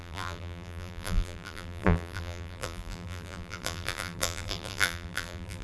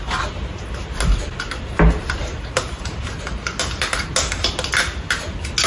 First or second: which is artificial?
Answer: first